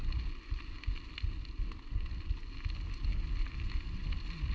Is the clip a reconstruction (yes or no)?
no